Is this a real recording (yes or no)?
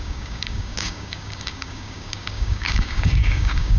no